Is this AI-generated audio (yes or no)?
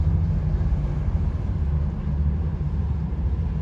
yes